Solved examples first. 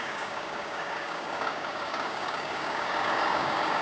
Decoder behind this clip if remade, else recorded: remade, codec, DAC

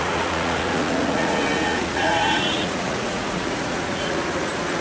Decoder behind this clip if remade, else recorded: remade, vocoder, Vocos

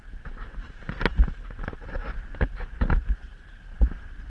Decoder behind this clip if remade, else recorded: recorded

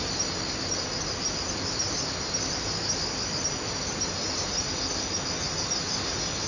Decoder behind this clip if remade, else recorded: recorded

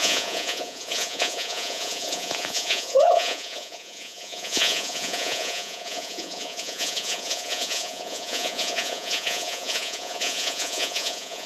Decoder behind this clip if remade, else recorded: remade, vocoder, Vocos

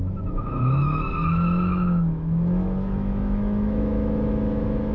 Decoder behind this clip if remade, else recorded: remade, autoencoder, DAC-VAE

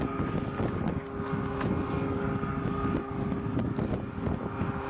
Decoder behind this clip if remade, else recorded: recorded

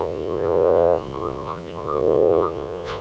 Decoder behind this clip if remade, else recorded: remade, vocoder, Vocos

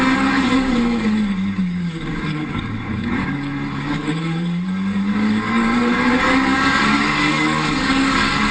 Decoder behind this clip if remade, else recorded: remade, codec, DAC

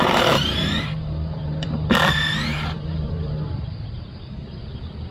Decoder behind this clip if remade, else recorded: remade, vocoder, BigVGAN v2